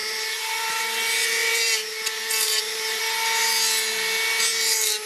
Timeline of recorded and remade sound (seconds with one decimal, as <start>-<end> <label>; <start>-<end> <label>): 0.0-0.8 remade; 0.8-1.4 recorded; 1.4-3.0 remade; 3.0-5.1 recorded